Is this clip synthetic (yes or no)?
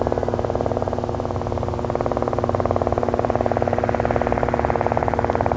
no